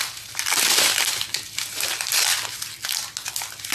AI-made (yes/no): no